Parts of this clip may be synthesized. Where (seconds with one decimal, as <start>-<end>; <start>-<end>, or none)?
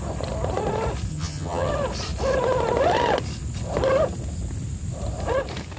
1.1-1.7